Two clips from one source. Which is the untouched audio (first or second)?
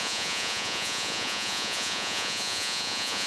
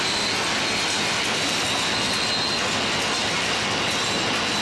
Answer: second